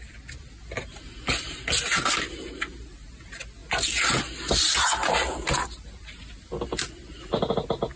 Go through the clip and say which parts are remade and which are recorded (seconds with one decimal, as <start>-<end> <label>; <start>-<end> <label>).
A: 0.0-8.0 recorded